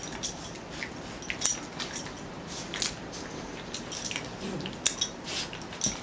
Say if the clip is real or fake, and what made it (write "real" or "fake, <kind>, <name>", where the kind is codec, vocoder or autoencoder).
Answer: real